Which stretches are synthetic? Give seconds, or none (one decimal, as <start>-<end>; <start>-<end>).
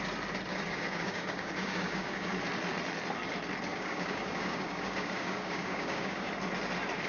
0.5-2.3; 3.7-6.3